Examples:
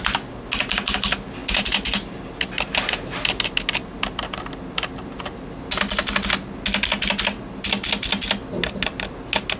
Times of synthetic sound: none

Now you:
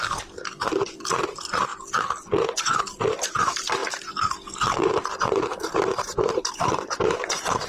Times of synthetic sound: 0.0-1.7 (vocoder, BigVGAN v2); 2.6-3.8; 5.2-7.7

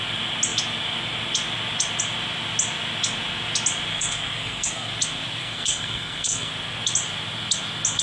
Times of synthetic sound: 3.9-4.9 (codec, SNAC); 5.4-6.5

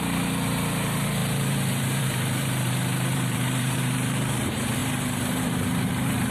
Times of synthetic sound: 0.0-6.3 (vocoder, BigVGAN v2)

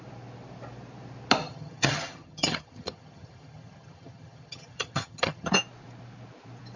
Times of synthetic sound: 1.4-5.5 (vocoder, HiFi-GAN)

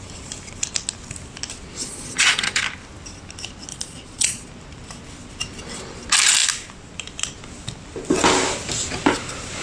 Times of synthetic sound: 1.8-2.6 (vocoder, Vocos); 3.7-4.5

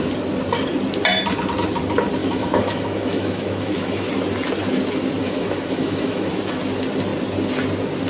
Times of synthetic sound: 2.2-4.1 (autoencoder, DAC-VAE); 5.2-6.3

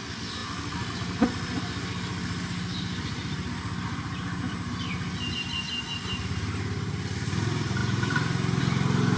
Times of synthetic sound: none